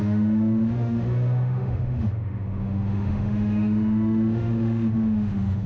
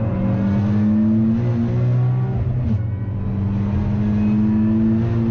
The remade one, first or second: first